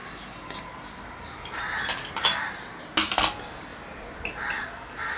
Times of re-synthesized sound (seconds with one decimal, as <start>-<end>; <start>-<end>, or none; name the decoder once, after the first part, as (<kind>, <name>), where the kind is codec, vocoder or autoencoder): none